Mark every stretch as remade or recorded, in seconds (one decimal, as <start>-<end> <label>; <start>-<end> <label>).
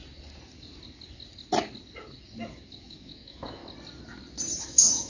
0.0-2.8 recorded; 2.8-3.6 remade; 3.6-4.6 recorded; 4.6-5.1 remade